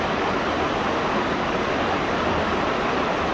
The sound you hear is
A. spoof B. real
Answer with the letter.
B